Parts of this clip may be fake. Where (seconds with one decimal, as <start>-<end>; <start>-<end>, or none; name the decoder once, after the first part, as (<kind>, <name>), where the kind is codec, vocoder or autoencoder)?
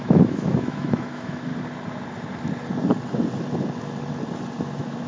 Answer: 0.0-1.5 (autoencoder, DAC-VAE); 4.6-5.1